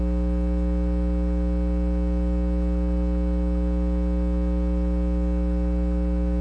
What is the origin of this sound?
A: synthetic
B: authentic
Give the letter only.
B